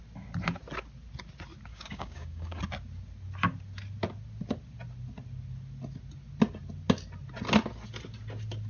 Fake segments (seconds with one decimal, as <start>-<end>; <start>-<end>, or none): 1.7-2.6